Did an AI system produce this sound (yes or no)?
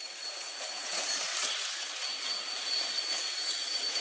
yes